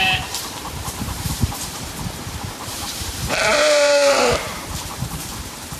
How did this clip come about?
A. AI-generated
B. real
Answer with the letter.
A